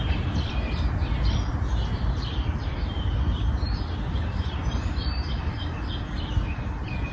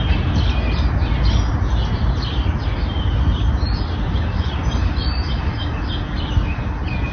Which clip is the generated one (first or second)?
first